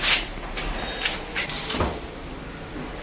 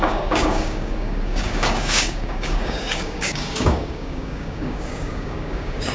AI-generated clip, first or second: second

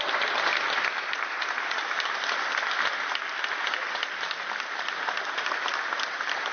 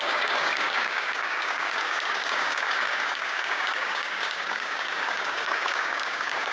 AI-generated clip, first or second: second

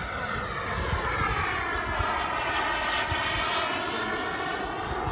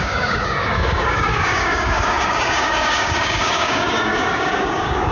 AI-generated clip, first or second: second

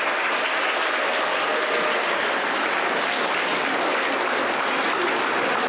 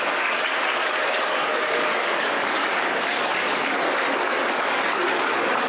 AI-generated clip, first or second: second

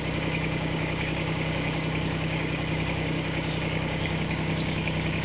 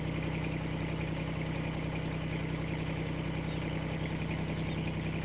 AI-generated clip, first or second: first